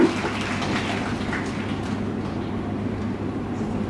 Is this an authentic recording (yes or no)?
yes